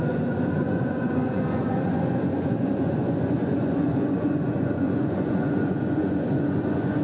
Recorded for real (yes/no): no